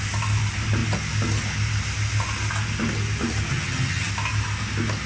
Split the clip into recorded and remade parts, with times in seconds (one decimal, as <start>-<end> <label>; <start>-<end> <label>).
0.0-3.5 recorded; 3.5-4.1 remade; 4.1-5.1 recorded